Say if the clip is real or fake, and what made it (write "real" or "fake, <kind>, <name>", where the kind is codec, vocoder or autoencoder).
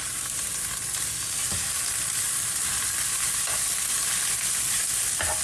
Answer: real